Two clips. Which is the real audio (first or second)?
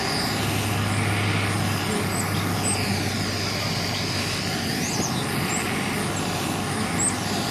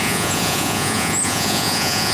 first